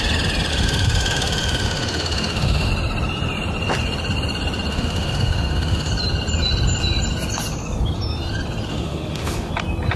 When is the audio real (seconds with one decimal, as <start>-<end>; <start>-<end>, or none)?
0.0-0.5; 2.7-4.7; 5.9-8.7; 9.5-10.0